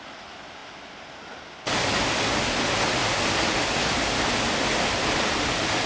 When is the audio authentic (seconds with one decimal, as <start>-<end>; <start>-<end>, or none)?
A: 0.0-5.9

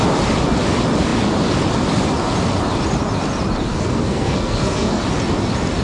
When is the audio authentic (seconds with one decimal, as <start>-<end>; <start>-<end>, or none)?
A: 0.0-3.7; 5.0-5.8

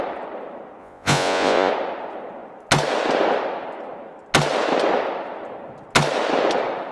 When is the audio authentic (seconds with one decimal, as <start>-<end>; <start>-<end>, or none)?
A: 0.0-0.8; 1.7-6.9

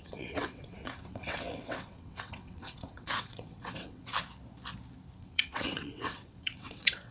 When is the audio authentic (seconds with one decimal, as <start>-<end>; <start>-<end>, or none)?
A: 4.1-5.2

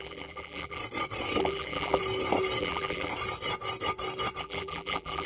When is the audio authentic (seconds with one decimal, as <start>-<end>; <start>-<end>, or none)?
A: 0.8-1.4; 2.0-2.6; 3.1-4.4